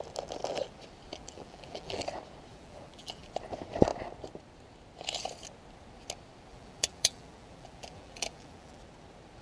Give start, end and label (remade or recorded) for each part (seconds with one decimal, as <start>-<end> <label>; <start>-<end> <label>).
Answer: 0.0-1.1 recorded; 1.1-2.0 remade; 2.0-2.5 recorded; 2.5-3.3 remade; 3.3-6.5 recorded; 6.5-8.8 remade; 8.8-9.4 recorded